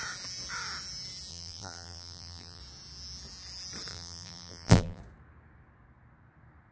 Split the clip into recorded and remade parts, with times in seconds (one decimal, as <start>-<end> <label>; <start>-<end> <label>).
0.0-1.3 recorded; 1.3-2.6 remade; 2.6-3.9 recorded; 3.9-5.0 remade; 5.0-6.7 recorded